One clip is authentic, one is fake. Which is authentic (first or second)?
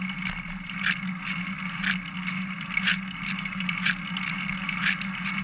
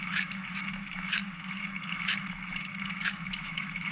first